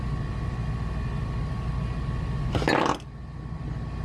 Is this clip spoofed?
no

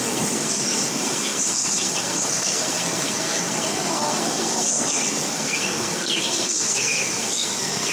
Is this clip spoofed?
yes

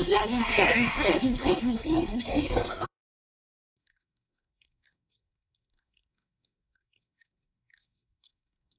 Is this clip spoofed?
yes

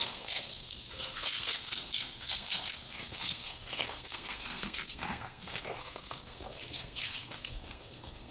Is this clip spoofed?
yes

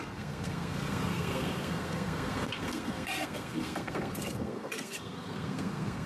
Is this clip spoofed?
yes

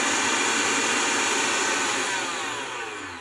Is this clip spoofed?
no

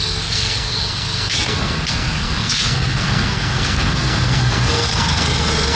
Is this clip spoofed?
yes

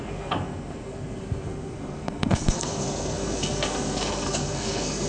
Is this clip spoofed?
yes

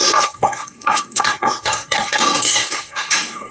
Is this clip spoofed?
yes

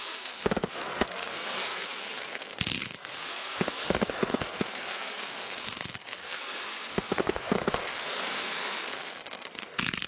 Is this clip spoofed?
yes